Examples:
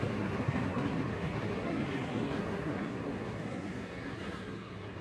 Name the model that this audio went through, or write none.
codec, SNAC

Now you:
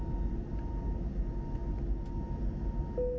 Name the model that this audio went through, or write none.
none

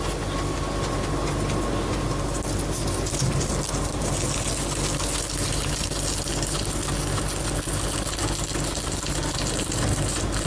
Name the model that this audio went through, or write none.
none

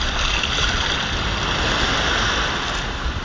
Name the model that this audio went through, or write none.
none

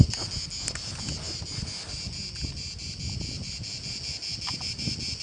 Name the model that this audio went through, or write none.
none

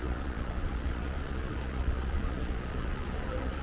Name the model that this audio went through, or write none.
vocoder, Vocos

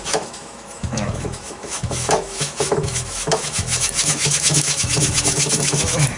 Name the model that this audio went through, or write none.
autoencoder, DAC-VAE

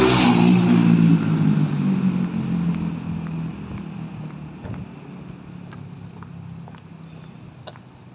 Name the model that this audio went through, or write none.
none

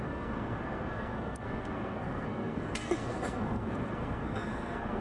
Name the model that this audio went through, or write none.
codec, SNAC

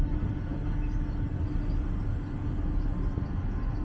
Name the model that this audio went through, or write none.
none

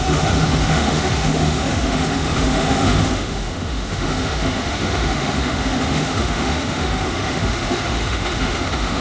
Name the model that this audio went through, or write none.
autoencoder, DAC-VAE